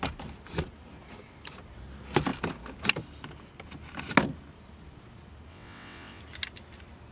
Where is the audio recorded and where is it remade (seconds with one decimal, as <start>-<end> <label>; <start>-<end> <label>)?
0.0-5.5 recorded; 5.5-6.2 remade; 6.2-7.1 recorded